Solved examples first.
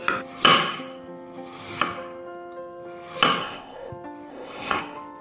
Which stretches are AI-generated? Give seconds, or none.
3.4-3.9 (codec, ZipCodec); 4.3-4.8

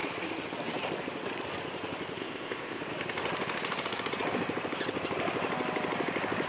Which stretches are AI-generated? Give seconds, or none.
2.2-2.8 (codec, ZipCodec)

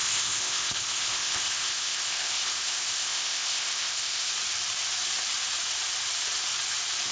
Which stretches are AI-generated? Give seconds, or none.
0.0-4.3 (codec, ZipCodec)

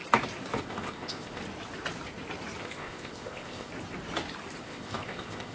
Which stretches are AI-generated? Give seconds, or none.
0.6-1.4 (codec, ZipCodec); 2.6-3.7; 4.6-5.5

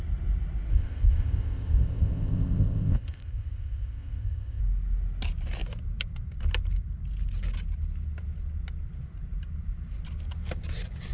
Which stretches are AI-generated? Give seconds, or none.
0.7-4.6 (codec, ZipCodec)

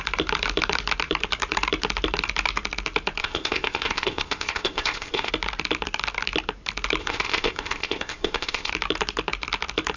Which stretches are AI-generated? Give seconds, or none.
3.2-5.3 (codec, ZipCodec); 7.0-8.7

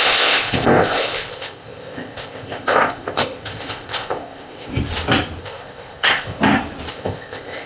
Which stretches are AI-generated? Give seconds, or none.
0.0-4.7 (codec, ZipCodec); 5.4-6.4; 6.9-7.7